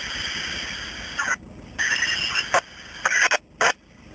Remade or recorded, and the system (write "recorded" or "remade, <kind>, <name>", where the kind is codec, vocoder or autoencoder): recorded